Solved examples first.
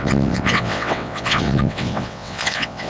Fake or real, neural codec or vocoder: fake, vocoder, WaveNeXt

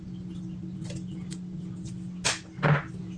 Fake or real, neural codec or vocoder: real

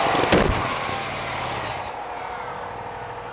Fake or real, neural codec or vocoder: real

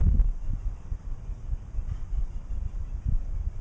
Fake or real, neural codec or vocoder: real